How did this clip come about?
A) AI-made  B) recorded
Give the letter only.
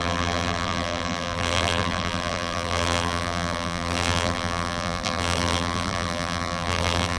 A